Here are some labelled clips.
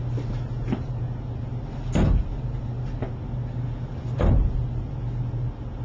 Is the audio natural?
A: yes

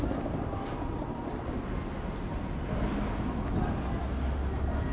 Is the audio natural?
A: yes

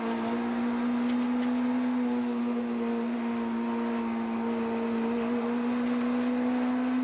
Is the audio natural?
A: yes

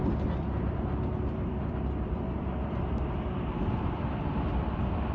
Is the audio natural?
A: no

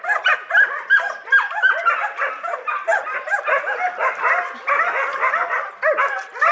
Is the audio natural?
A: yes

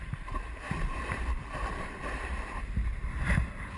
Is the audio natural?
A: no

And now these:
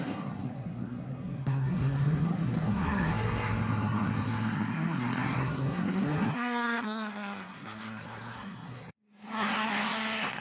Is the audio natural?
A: no